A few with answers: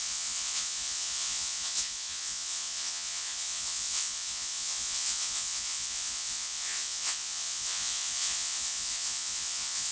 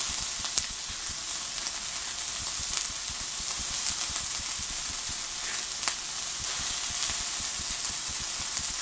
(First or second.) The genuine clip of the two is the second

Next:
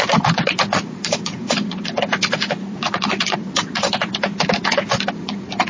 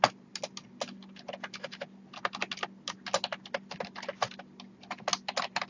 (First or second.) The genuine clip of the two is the second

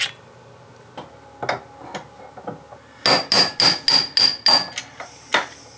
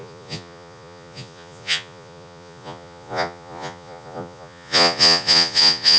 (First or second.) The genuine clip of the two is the first